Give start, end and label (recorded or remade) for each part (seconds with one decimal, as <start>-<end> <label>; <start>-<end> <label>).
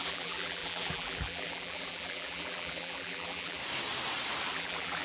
0.0-3.6 remade; 3.6-4.5 recorded; 4.5-5.0 remade